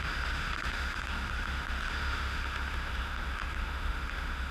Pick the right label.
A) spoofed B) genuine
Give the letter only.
A